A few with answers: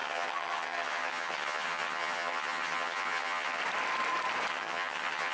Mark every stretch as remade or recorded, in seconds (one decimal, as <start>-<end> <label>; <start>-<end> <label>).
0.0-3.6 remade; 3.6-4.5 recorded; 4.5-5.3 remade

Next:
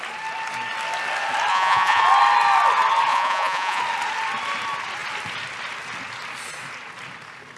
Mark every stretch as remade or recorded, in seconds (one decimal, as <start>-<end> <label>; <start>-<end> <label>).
0.0-1.5 recorded; 1.5-2.0 remade; 2.0-3.1 recorded; 3.1-3.8 remade; 3.8-7.6 recorded

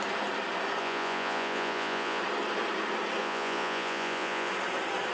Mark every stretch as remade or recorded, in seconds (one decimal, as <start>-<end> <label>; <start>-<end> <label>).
0.0-0.8 recorded; 0.8-2.2 remade; 2.2-3.2 recorded; 3.2-4.5 remade; 4.5-5.1 recorded

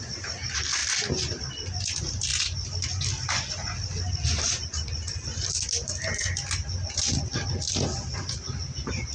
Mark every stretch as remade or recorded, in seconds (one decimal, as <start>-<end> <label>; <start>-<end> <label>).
0.0-9.1 recorded

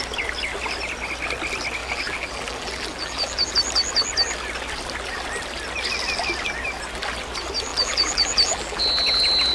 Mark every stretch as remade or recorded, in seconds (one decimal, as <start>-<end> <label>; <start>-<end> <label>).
0.0-1.8 recorded; 1.8-3.5 remade; 3.5-7.7 recorded; 7.7-8.8 remade; 8.8-9.5 recorded